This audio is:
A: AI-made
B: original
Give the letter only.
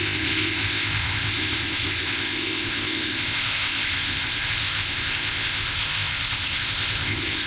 A